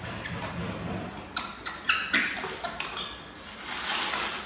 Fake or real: real